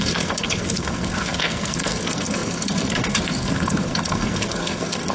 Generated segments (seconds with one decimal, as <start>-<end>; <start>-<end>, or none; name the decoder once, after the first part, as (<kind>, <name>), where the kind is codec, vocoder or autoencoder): 0.0-5.1 (codec, SNAC)

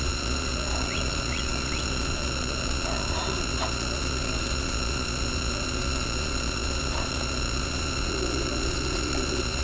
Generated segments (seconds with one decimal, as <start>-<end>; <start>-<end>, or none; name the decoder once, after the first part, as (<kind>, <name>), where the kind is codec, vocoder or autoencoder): 0.0-9.6 (vocoder, Vocos)

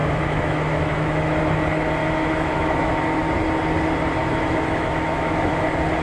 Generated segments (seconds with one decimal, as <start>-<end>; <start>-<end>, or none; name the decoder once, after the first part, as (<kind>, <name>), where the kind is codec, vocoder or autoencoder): 0.0-1.4 (autoencoder, DAC-VAE); 2.0-2.9; 4.2-5.6

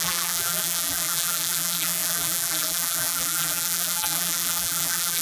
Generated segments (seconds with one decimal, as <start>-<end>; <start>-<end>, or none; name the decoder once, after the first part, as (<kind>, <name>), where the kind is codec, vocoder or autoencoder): 0.0-5.2 (vocoder, BigVGAN v2)

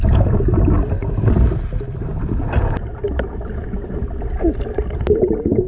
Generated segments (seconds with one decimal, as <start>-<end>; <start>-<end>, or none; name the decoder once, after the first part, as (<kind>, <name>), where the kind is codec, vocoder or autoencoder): none

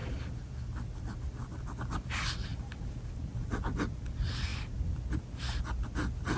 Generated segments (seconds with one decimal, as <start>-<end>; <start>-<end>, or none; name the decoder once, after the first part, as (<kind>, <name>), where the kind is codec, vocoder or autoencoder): none

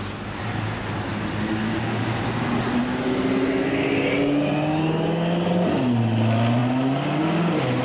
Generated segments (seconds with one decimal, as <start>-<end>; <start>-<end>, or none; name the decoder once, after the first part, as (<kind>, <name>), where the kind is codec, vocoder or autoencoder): 1.6-2.2 (codec, DAC)

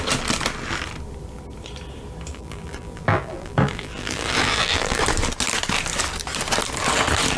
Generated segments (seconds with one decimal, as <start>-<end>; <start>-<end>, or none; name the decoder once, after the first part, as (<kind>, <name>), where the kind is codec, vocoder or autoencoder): 2.3-5.0 (vocoder, BigVGAN v2)